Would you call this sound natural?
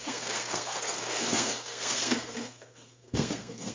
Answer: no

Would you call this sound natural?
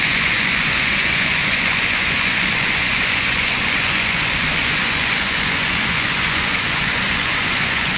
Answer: no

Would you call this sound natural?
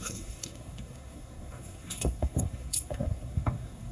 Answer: no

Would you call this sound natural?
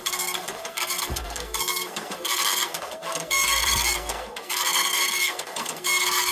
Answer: no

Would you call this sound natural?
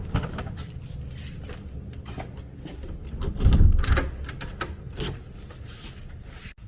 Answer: yes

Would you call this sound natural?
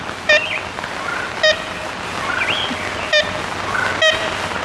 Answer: yes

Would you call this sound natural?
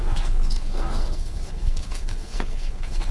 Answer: no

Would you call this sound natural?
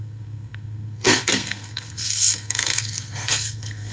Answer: no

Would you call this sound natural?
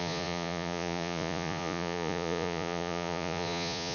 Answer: no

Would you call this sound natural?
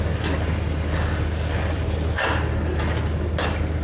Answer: yes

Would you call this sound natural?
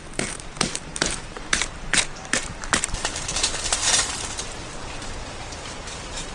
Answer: no